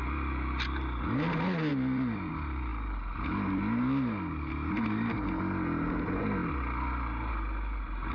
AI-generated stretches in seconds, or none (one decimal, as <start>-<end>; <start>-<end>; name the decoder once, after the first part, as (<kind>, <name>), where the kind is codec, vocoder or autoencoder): 1.7-2.3 (vocoder, BigVGAN v2)